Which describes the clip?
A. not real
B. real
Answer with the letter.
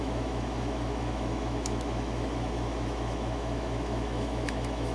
A